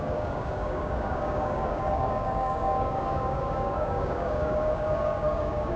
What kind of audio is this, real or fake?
fake